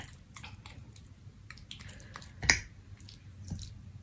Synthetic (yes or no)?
no